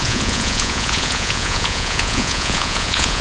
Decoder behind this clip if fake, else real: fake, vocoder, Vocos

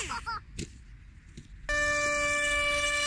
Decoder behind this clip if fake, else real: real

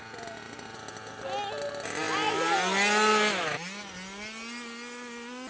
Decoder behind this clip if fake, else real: real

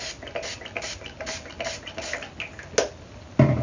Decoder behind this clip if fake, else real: real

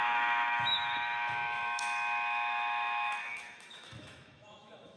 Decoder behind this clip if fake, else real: fake, autoencoder, DAC-VAE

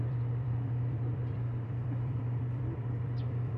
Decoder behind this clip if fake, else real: fake, vocoder, BigVGAN v2